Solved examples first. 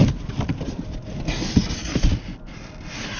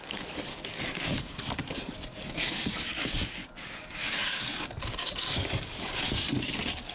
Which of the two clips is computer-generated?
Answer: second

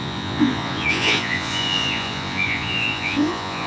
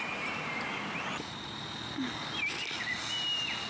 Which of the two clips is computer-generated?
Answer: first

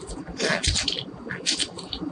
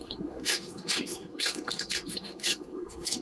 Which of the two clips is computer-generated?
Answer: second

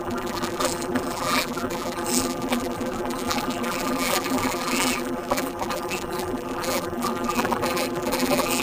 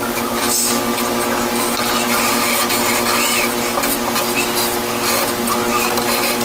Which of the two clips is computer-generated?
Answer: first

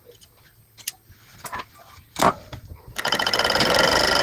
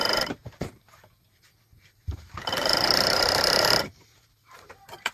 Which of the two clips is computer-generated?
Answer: second